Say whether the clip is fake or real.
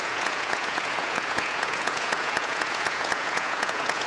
fake